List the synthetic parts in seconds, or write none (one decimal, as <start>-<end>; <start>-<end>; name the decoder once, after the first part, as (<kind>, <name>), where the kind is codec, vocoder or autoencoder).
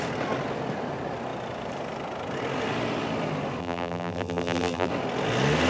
3.6-4.9 (vocoder, BigVGAN v2)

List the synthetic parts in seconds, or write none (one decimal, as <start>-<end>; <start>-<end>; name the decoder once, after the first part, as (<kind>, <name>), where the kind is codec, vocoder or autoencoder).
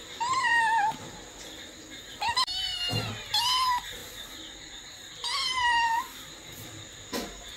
none